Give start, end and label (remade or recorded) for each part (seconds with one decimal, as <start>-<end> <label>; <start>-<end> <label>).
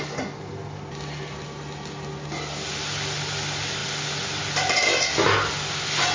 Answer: 0.0-6.1 recorded